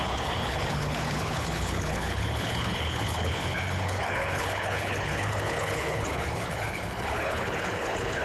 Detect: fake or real fake